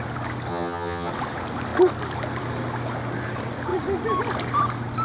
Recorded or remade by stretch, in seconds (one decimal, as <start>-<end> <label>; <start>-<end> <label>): 0.0-0.5 recorded; 0.5-1.1 remade; 1.1-5.0 recorded